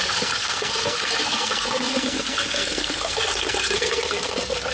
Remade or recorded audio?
remade